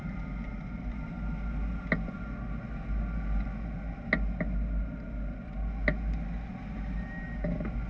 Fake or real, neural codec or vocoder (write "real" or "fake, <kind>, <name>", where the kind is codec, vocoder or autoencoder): real